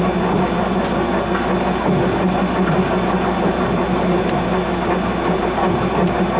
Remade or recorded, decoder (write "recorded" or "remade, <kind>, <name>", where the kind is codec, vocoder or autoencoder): recorded